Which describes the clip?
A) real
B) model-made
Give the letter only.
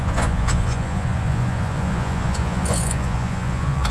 B